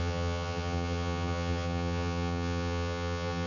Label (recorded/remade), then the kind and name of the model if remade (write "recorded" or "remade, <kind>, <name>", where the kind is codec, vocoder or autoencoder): remade, vocoder, HiFi-GAN